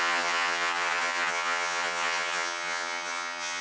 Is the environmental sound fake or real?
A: fake